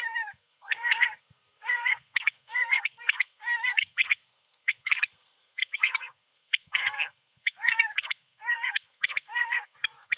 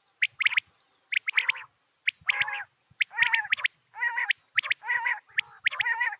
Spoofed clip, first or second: first